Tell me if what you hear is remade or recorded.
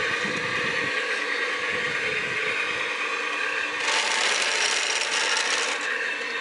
recorded